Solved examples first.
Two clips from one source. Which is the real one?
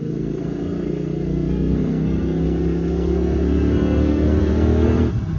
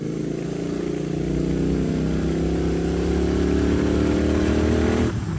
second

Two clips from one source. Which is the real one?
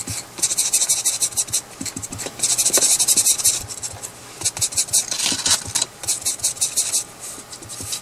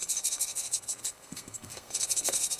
first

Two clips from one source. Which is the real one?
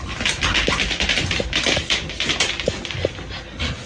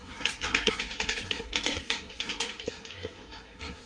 first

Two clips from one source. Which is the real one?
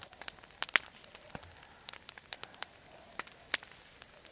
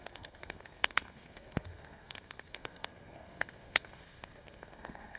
first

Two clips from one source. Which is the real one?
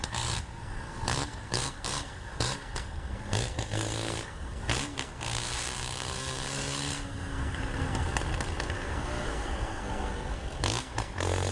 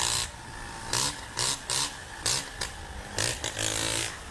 second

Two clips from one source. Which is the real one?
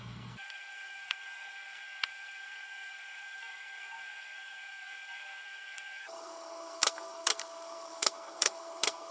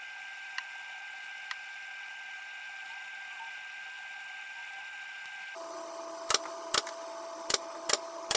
second